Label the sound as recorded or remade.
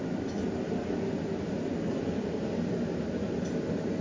recorded